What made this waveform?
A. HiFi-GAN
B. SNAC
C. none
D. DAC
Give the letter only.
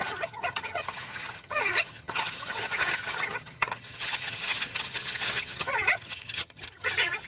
A